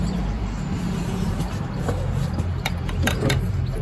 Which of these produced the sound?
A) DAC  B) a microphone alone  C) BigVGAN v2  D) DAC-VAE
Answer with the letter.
C